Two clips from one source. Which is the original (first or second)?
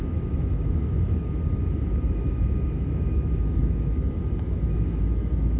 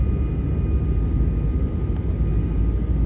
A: second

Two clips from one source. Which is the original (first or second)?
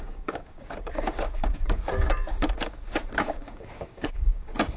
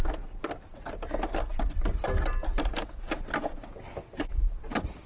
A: second